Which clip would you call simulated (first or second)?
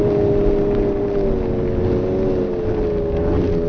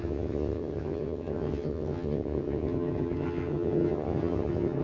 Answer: second